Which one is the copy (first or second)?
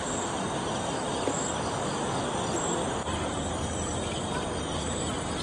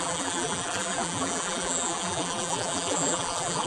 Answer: second